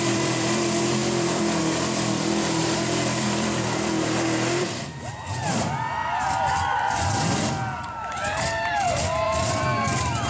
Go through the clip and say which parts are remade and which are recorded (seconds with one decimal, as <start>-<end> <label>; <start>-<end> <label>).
0.0-10.3 remade